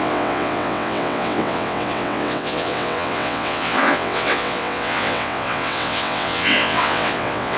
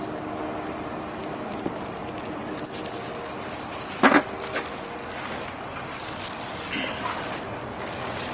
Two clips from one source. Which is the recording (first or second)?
second